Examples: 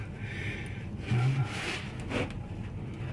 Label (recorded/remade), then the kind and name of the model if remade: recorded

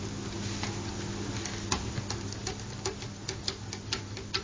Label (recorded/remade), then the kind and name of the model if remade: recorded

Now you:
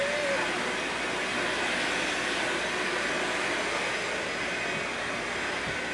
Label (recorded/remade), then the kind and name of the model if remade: recorded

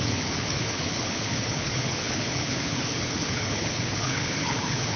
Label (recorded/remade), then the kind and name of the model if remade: remade, codec, HILCodec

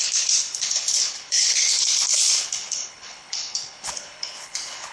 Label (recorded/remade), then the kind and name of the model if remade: remade, codec, HILCodec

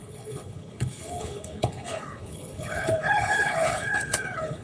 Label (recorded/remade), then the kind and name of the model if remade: remade, codec, HILCodec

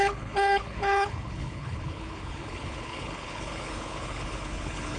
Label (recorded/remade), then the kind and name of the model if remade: remade, codec, HILCodec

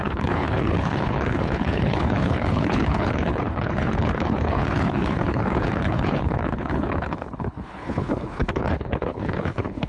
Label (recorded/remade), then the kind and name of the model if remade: remade, codec, HILCodec